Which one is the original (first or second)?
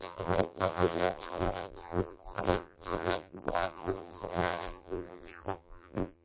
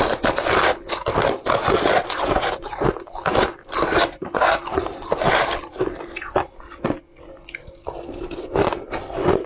second